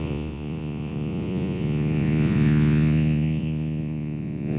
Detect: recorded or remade remade